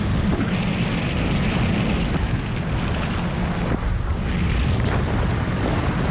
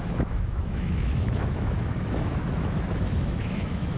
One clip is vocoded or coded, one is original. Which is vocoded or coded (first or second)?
second